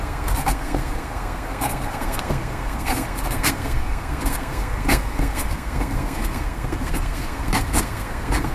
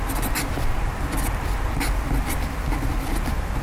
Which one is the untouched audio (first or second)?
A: second